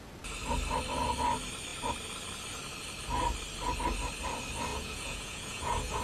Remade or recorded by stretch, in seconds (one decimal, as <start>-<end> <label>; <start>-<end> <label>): 0.0-4.7 recorded; 4.7-6.0 remade